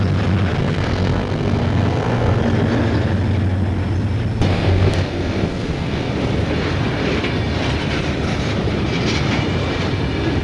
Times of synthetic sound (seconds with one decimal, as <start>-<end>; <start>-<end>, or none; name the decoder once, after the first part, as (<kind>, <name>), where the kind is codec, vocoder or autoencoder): 0.6-2.4 (codec, SNAC); 4.5-6.1